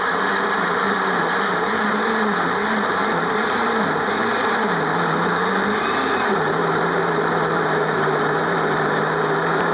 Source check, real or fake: fake